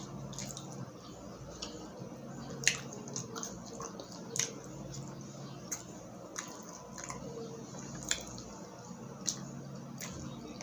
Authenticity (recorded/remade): recorded